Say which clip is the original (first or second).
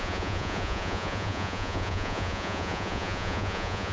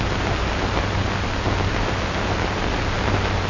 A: second